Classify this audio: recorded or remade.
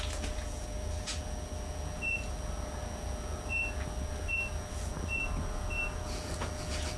remade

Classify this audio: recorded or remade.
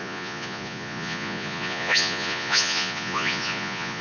remade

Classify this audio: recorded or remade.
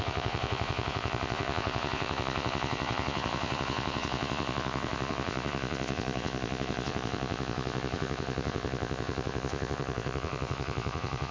remade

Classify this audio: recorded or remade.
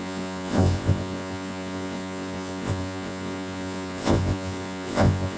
remade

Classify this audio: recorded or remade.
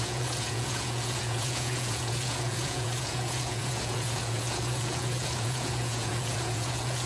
remade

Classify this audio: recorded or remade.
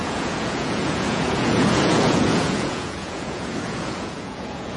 remade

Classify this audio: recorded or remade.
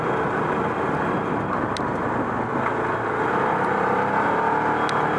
recorded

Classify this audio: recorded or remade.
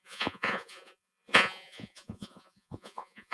remade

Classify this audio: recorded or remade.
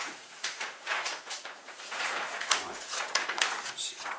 remade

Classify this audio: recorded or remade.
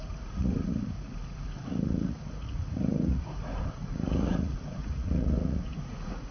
remade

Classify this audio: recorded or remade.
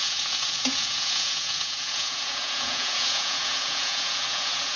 remade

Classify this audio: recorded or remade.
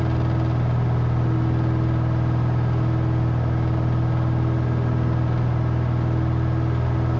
recorded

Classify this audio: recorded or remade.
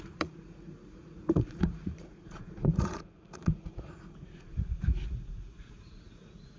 remade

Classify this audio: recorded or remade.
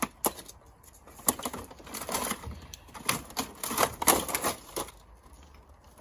recorded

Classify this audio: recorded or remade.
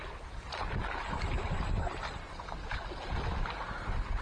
recorded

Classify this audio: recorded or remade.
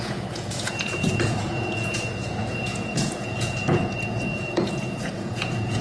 remade